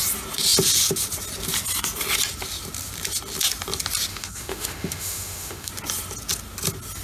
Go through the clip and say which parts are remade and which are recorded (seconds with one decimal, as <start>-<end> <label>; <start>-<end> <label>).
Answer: 0.0-4.1 recorded; 4.1-5.7 remade; 5.7-7.0 recorded